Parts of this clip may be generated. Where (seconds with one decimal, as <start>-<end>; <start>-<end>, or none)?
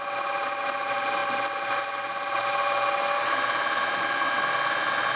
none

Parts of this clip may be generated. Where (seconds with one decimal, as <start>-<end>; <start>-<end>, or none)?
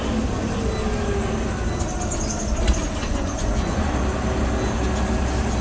3.0-3.9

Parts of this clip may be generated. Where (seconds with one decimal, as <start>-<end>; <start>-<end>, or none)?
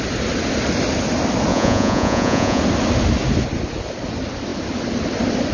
1.5-2.6